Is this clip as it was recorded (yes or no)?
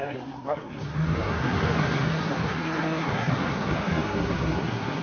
no